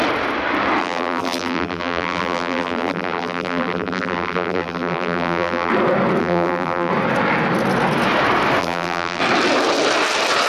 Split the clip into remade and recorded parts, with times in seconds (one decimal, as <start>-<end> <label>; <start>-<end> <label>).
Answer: 0.0-0.8 recorded; 0.8-5.7 remade; 5.7-6.2 recorded; 6.2-6.9 remade; 6.9-8.6 recorded; 8.6-9.2 remade; 9.2-10.5 recorded